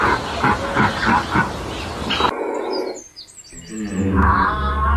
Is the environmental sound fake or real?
real